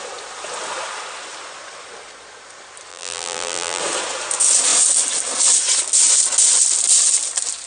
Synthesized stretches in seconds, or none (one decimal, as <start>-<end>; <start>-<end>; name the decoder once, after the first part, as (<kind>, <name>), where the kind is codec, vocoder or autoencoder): 2.9-3.8 (vocoder, BigVGAN v2)